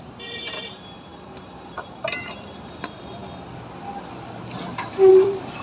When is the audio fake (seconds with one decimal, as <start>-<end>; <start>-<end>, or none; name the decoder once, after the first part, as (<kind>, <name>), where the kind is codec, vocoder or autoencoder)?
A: 0.0-3.2 (vocoder, BigVGAN v2); 5.1-5.6